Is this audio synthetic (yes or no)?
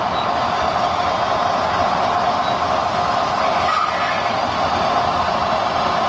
no